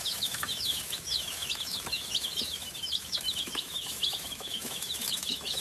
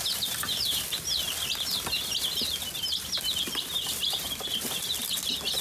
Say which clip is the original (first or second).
second